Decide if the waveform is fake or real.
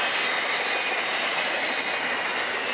real